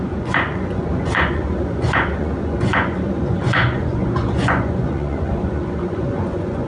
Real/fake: fake